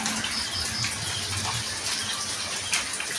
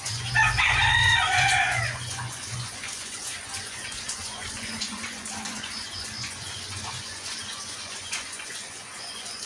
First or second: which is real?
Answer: first